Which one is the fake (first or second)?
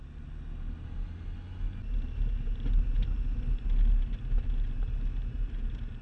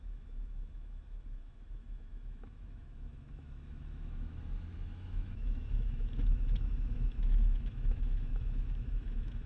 second